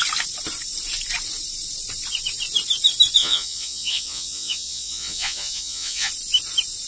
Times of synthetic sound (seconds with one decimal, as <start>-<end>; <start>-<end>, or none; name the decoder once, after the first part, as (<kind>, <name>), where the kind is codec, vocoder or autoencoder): 3.2-6.1 (vocoder, Vocos)